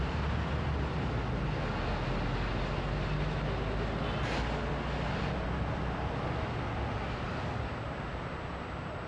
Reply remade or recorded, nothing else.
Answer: recorded